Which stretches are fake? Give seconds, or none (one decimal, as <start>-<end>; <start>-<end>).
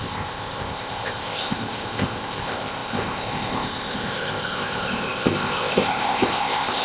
0.0-6.8